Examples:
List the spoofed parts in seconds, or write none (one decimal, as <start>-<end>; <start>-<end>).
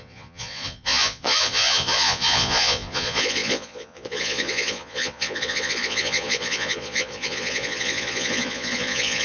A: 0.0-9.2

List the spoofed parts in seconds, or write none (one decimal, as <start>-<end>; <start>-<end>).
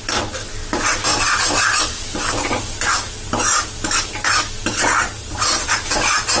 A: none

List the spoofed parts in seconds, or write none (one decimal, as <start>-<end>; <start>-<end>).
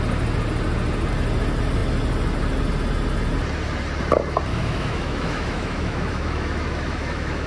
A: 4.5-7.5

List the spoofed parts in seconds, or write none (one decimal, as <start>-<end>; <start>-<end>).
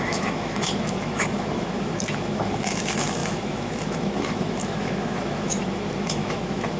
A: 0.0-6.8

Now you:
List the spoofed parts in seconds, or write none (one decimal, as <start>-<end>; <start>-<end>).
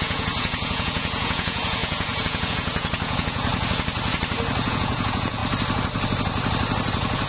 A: 0.0-3.5; 4.7-5.4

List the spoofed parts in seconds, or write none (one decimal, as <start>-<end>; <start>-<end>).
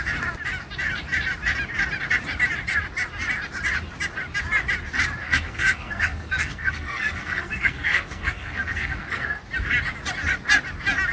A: 5.2-9.4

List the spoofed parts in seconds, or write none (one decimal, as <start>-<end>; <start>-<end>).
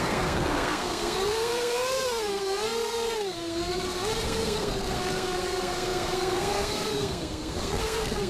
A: 0.0-8.3